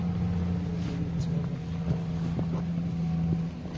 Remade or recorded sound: recorded